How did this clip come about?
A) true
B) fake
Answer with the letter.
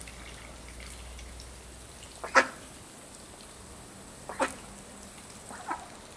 A